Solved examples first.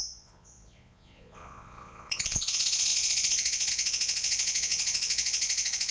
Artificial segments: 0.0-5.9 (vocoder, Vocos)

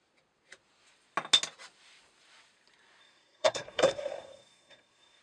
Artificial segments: 3.0-5.2 (codec, SNAC)

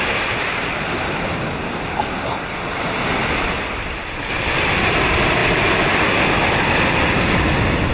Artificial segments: none

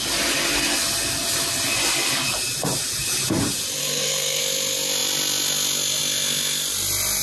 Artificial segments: 3.8-4.4 (codec, SNAC)